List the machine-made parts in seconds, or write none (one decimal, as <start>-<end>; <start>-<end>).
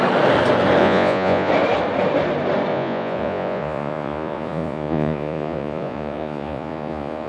0.8-1.5; 2.7-7.3